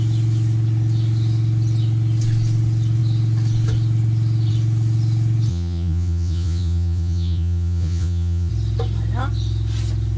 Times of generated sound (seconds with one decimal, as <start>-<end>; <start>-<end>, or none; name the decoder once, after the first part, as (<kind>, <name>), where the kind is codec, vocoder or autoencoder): 5.5-8.5 (vocoder, Vocos)

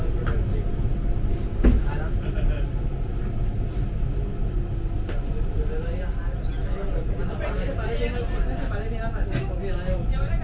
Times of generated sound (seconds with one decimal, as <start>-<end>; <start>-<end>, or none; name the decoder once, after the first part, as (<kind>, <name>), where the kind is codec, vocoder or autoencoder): 1.3-2.0 (codec, DAC)

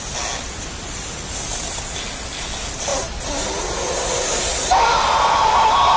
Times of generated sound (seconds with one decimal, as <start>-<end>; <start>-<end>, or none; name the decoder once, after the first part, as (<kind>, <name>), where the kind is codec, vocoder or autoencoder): none

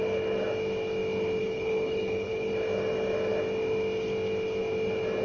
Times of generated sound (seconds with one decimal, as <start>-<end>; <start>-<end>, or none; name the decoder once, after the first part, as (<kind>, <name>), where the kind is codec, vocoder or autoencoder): 1.4-2.5 (codec, HILCodec)

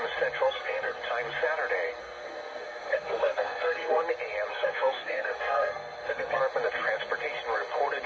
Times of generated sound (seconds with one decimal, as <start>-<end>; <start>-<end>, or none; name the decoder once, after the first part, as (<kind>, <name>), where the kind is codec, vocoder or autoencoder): 0.4-1.0 (codec, SNAC); 2.0-4.0; 4.5-6.4

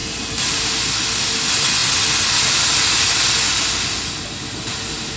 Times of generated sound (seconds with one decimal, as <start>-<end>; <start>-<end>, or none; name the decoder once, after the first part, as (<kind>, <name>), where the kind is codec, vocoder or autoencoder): none

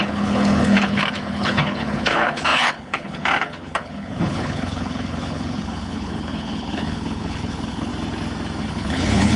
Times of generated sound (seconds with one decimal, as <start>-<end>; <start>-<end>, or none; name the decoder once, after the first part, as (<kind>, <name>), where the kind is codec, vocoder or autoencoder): 0.0-7.9 (codec, HILCodec); 8.7-9.4

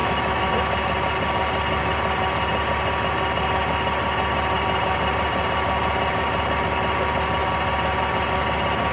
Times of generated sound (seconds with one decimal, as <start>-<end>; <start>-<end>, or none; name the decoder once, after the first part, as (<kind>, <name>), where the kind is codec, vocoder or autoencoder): 0.0-0.5 (autoencoder, DAC-VAE)